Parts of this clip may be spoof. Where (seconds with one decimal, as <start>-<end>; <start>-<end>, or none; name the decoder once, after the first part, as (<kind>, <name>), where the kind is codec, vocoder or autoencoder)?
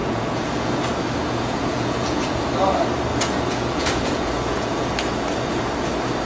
0.0-0.7 (vocoder, Vocos); 1.2-2.4; 3.1-4.9